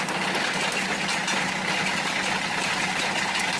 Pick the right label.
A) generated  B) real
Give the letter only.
B